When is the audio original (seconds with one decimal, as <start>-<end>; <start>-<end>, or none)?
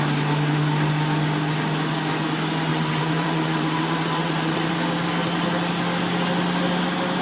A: 0.0-2.7; 4.7-7.2